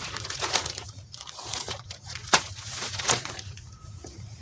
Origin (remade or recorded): remade